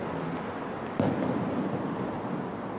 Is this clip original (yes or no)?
yes